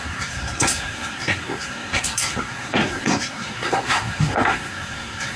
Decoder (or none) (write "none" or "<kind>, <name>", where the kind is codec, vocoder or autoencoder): codec, SNAC